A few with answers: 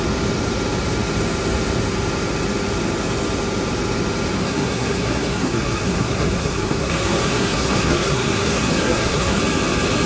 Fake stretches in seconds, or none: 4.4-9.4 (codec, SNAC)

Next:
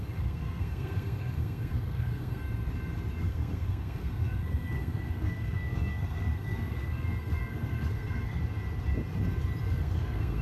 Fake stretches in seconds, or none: 0.0-2.4 (codec, SNAC); 3.2-8.4; 9.7-10.4

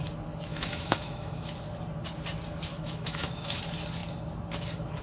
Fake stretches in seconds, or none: 0.5-1.5 (autoencoder, DAC-VAE); 2.7-3.6

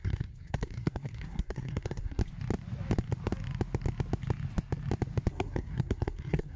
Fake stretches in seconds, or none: 0.0-2.2 (codec, SNAC); 5.3-6.6

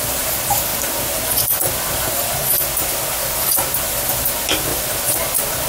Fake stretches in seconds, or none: none

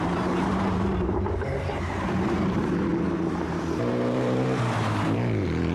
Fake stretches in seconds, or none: 0.0-2.9 (vocoder, BigVGAN v2); 3.9-5.7